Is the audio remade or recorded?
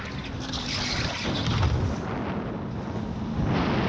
recorded